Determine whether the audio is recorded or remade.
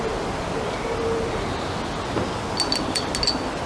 recorded